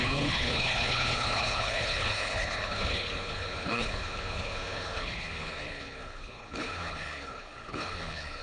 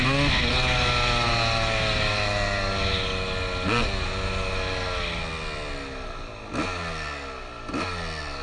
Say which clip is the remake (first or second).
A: first